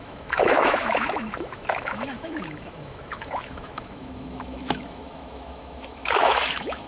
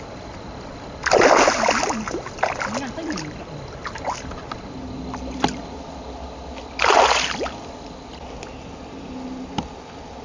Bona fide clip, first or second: second